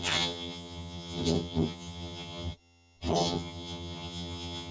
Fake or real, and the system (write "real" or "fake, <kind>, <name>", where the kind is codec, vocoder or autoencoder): fake, vocoder, HiFi-GAN